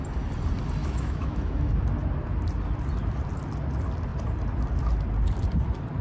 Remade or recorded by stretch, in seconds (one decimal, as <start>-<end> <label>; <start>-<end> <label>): 0.0-0.8 recorded; 0.8-1.7 remade; 1.7-6.0 recorded